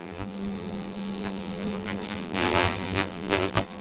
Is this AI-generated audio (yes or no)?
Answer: yes